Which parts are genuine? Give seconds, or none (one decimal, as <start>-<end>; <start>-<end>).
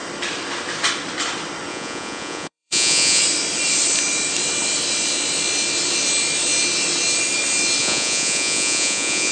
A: 0.0-1.7; 3.2-7.8